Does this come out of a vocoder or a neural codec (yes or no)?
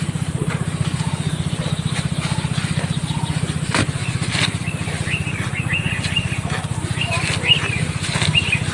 no